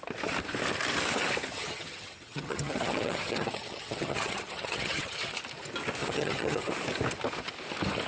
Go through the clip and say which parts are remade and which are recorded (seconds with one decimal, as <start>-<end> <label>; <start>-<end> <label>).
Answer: 0.0-1.5 recorded; 1.5-5.4 remade; 5.4-6.0 recorded; 6.0-6.7 remade; 6.7-8.1 recorded